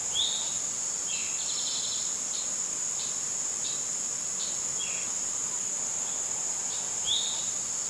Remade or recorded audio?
recorded